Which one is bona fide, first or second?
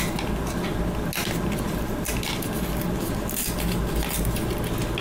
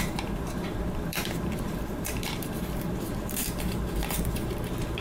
first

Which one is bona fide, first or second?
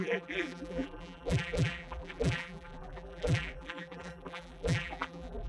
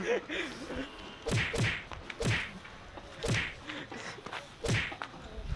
second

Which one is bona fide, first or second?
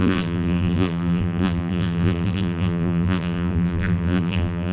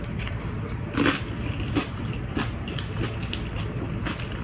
second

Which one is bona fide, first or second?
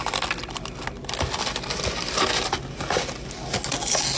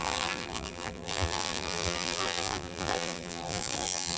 first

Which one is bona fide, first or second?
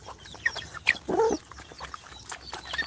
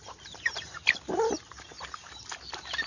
first